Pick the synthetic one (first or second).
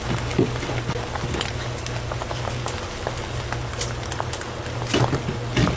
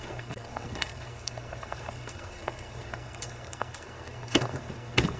second